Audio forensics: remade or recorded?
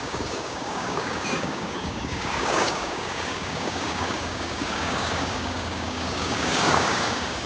remade